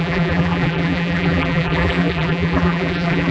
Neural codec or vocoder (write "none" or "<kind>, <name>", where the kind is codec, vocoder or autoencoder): vocoder, BigVGAN v2